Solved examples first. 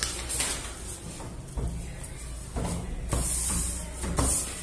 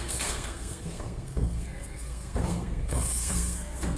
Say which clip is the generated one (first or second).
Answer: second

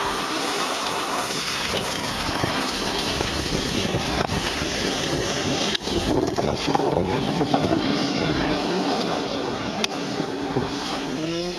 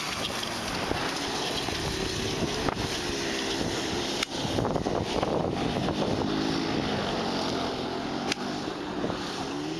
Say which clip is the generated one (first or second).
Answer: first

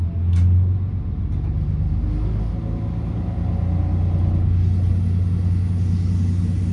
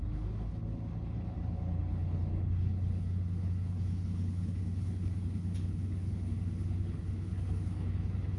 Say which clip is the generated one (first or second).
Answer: second